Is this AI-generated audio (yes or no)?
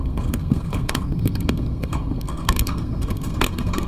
yes